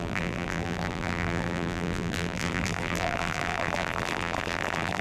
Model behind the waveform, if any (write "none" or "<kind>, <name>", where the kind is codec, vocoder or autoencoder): vocoder, BigVGAN v2